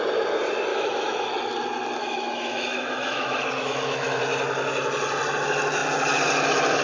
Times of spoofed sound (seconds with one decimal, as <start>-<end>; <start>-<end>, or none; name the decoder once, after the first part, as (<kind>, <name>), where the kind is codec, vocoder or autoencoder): 0.7-1.3 (autoencoder, DAC-VAE); 2.0-4.2

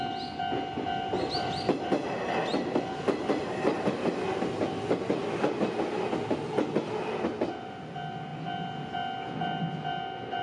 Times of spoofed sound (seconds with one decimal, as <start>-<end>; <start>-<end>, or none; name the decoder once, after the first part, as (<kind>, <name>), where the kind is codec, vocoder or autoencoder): none

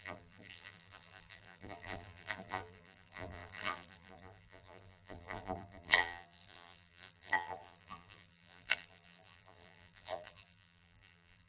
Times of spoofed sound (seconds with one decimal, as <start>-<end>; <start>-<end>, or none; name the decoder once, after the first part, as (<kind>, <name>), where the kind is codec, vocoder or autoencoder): 0.0-11.5 (vocoder, BigVGAN v2)

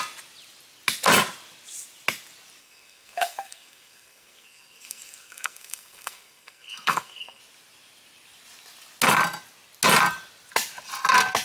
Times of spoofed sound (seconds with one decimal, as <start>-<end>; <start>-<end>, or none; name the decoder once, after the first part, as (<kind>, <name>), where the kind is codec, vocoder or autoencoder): 2.6-7.4 (codec, SNAC)

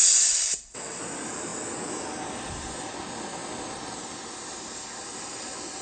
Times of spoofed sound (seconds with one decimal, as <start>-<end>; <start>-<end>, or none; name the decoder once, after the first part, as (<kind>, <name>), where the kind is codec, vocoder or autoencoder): 0.0-1.0 (vocoder, WaveNeXt)

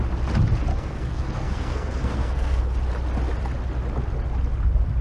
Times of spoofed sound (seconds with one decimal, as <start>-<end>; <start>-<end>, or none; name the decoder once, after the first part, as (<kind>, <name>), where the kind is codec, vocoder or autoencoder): 0.7-2.6 (codec, SNAC)

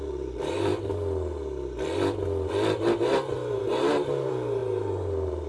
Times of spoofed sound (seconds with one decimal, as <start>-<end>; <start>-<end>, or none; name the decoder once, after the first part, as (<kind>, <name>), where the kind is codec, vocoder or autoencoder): 0.0-0.7 (vocoder, BigVGAN v2); 3.5-5.5

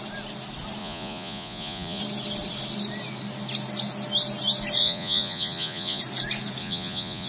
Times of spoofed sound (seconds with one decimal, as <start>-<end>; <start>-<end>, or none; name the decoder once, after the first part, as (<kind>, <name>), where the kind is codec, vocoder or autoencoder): 0.8-2.0 (vocoder, Vocos); 4.8-6.0; 6.6-7.3